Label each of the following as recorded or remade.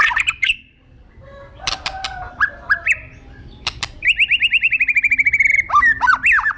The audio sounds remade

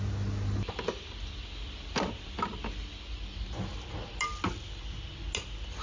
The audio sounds recorded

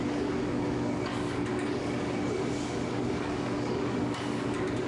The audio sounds remade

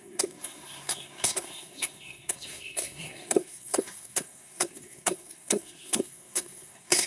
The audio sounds remade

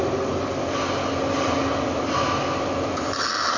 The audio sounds recorded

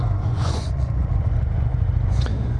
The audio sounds remade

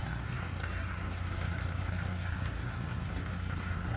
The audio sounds remade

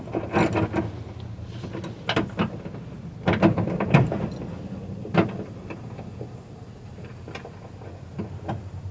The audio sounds recorded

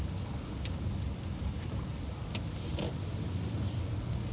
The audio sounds recorded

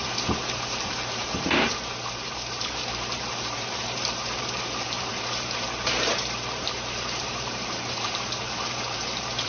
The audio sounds remade